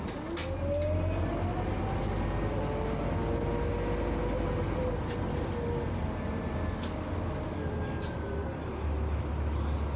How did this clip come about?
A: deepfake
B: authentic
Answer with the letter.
B